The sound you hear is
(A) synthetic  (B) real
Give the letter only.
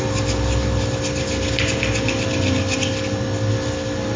B